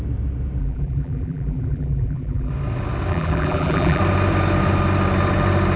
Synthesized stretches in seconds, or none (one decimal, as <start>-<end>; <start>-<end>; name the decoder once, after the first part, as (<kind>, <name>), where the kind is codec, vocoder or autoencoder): 0.6-2.5 (vocoder, BigVGAN v2); 3.1-4.0